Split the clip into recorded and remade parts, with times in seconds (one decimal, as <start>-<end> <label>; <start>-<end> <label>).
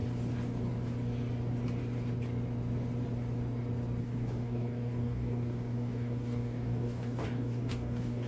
0.0-4.0 recorded; 4.0-8.3 remade